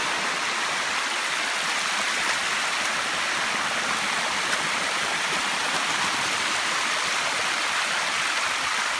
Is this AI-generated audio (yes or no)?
no